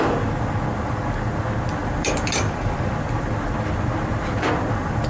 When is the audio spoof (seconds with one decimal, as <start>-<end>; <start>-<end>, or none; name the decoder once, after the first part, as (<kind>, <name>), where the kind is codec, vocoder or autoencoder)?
1.8-5.1 (vocoder, BigVGAN v2)